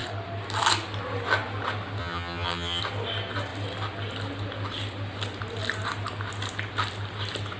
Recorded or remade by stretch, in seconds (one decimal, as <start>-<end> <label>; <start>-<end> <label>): 0.0-2.0 recorded; 2.0-2.8 remade; 2.8-7.6 recorded